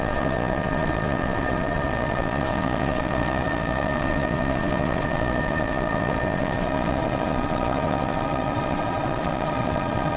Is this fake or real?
fake